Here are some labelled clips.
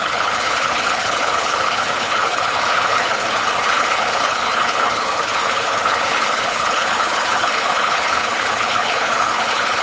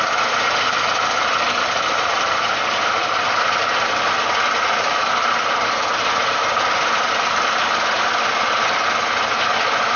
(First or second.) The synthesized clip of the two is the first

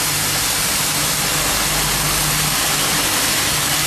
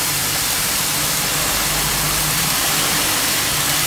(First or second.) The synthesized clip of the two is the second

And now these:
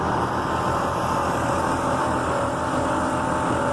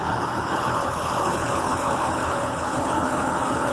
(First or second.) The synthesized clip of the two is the second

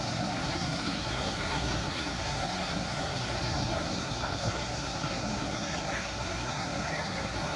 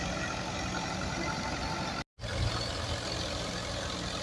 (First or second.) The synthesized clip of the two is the first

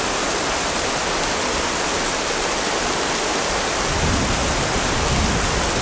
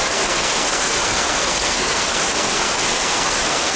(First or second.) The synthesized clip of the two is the second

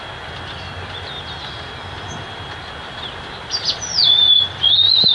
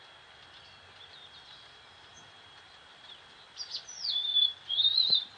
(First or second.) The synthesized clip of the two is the second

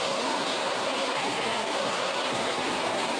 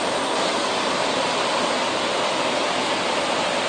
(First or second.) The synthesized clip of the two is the first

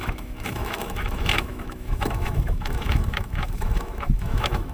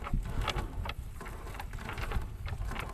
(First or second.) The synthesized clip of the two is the first